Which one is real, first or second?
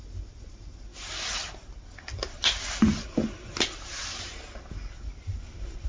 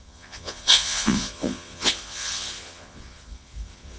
first